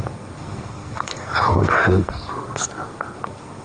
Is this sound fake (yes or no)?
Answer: yes